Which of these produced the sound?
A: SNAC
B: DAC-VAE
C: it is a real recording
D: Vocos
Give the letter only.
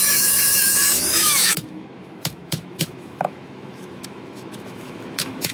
B